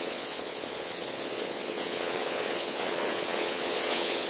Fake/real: fake